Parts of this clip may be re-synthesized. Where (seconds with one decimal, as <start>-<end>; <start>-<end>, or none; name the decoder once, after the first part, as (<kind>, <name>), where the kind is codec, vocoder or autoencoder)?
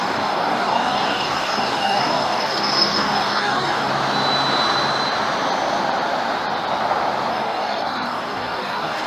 0.0-3.9 (codec, DAC); 7.3-9.1